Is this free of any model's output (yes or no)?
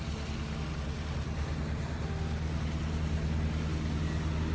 yes